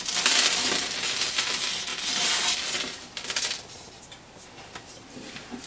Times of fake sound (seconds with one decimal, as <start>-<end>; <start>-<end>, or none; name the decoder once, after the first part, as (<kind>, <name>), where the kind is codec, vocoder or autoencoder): 1.9-5.3 (vocoder, BigVGAN v2)